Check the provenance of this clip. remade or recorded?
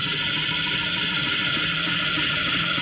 remade